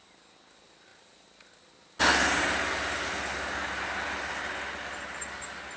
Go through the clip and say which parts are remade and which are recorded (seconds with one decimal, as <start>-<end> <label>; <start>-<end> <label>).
0.0-5.8 recorded

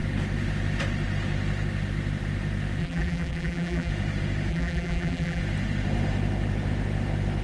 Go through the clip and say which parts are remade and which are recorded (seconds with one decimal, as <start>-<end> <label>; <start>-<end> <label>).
0.0-2.8 recorded; 2.8-3.9 remade; 3.9-4.5 recorded; 4.5-5.4 remade; 5.4-7.4 recorded

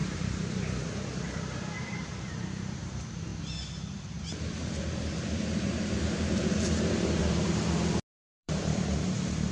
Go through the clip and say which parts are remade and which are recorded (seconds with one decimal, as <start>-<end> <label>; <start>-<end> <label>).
0.0-3.3 remade; 3.3-5.2 recorded; 5.2-7.2 remade; 7.2-8.3 recorded; 8.3-9.5 remade